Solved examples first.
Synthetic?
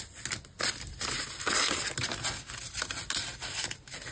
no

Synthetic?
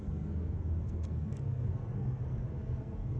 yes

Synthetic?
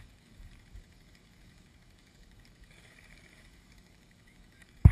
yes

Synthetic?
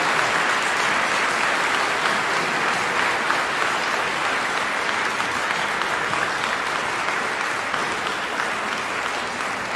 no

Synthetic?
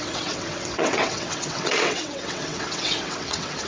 yes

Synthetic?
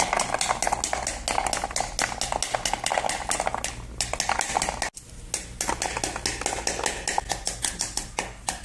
no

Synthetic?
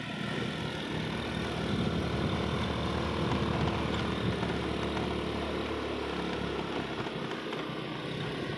no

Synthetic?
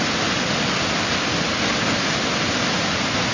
no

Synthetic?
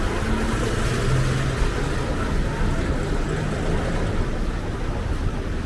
no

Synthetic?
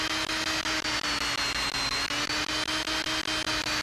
no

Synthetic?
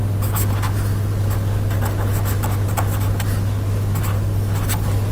no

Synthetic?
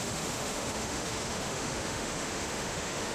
yes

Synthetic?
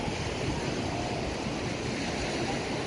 no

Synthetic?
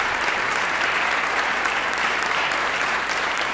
yes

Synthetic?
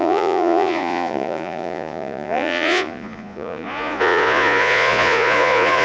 yes